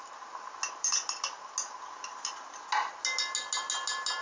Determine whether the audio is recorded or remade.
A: recorded